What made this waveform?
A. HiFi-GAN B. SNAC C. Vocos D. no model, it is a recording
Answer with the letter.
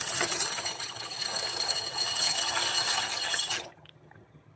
A